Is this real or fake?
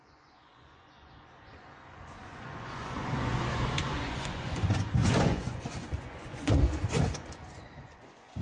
fake